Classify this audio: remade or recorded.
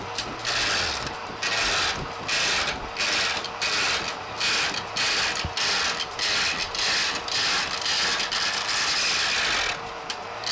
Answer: recorded